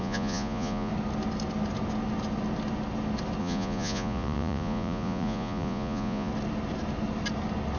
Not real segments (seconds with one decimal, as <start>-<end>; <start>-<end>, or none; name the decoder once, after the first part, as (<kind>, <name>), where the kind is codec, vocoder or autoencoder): 0.0-0.9 (vocoder, Vocos); 3.4-6.3